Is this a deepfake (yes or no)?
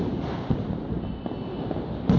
no